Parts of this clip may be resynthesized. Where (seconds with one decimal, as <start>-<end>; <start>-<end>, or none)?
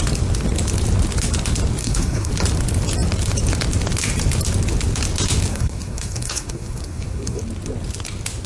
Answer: 1.8-2.3; 5.5-7.4